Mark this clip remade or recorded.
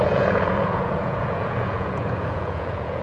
remade